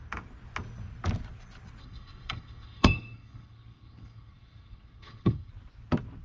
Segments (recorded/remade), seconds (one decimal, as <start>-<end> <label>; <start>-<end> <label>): 0.0-1.8 recorded; 1.8-5.5 remade; 5.5-6.2 recorded